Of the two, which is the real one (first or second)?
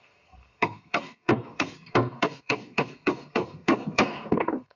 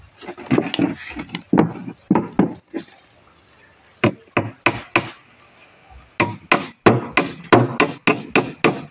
second